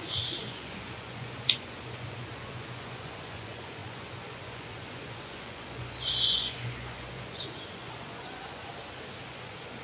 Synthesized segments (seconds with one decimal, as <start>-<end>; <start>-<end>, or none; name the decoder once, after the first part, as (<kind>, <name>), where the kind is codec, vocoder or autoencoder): 0.0-8.7 (vocoder, Vocos); 9.3-9.8